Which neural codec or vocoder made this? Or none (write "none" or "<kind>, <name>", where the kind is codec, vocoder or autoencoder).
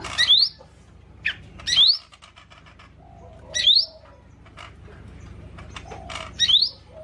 none